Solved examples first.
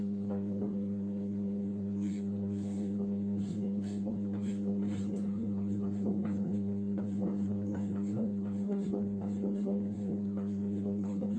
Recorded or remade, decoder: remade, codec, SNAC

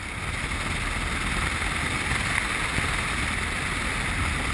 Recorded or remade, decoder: recorded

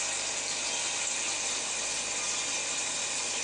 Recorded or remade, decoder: recorded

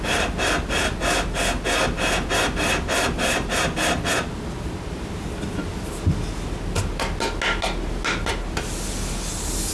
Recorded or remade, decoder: recorded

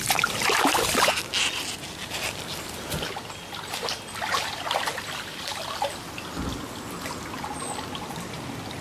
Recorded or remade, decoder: recorded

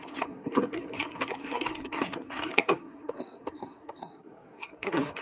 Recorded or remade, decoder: remade, codec, SNAC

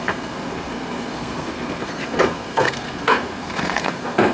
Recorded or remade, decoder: remade, codec, SNAC